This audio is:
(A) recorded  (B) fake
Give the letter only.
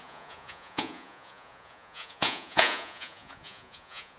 B